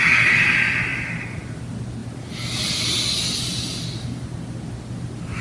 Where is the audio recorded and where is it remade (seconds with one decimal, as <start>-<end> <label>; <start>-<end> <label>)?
0.0-5.4 recorded